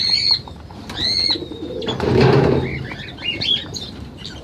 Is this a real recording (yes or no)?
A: yes